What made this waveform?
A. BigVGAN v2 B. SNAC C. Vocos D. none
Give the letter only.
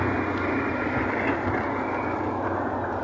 D